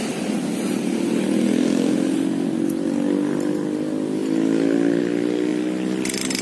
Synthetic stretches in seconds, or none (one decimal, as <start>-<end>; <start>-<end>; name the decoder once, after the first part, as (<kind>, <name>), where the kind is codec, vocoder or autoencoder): none